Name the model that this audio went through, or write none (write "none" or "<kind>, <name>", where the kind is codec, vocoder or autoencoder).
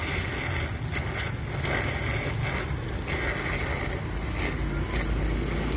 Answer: none